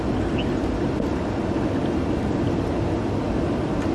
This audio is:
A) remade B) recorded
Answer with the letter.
B